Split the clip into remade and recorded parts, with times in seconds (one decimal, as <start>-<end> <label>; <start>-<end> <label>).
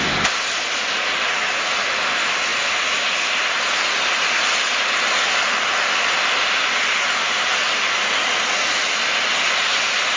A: 0.0-10.2 recorded